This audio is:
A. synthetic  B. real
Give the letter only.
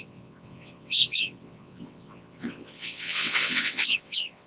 A